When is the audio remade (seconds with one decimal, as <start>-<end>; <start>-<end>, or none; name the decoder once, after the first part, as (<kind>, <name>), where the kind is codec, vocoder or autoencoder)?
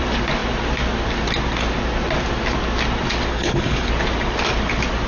3.3-3.9 (codec, HILCodec)